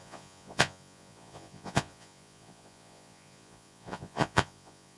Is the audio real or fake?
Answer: fake